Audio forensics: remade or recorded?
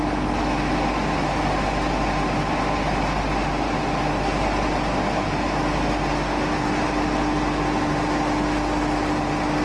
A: recorded